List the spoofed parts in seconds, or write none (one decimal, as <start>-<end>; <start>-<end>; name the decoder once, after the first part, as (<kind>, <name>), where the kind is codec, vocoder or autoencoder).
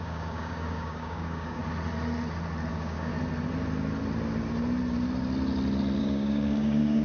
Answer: 0.0-1.6 (codec, DAC); 2.7-3.1; 6.0-7.0